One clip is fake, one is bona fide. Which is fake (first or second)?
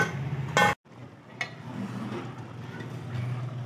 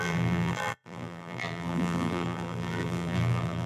second